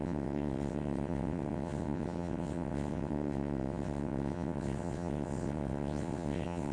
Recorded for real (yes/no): no